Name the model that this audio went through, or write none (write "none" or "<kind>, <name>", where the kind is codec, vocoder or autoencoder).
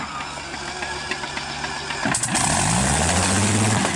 none